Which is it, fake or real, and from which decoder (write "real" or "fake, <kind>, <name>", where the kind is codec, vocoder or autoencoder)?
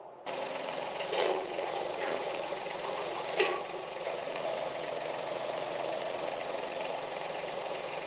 fake, vocoder, Vocos